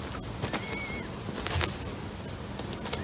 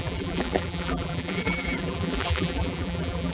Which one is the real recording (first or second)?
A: first